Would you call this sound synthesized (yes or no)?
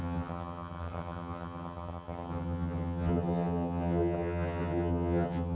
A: yes